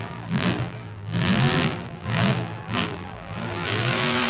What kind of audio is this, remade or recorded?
remade